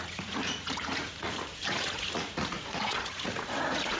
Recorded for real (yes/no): no